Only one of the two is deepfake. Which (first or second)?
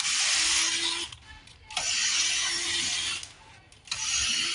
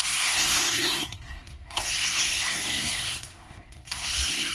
second